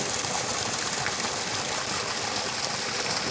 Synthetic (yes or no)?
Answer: no